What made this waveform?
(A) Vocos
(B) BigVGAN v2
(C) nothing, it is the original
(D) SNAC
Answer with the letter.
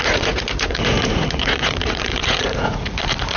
A